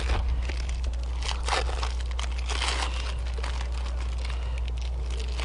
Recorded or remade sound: recorded